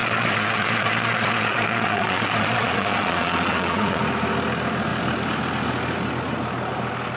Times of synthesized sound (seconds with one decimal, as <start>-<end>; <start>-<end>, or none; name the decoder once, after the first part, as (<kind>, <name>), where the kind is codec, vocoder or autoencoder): 0.0-4.0 (vocoder, Vocos)